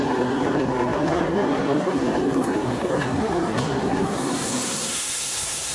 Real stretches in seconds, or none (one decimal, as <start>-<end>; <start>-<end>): none